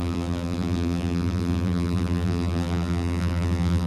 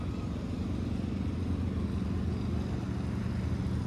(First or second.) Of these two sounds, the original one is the second